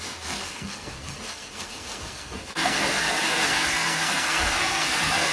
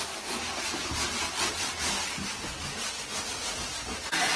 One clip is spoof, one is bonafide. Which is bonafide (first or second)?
second